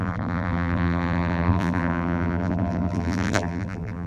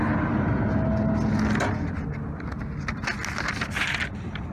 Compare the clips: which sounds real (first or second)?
second